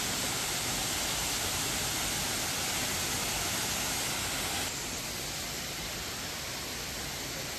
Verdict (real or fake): real